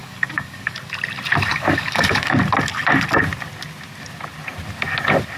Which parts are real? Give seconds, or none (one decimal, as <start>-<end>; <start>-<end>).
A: 0.8-1.5; 2.4-5.4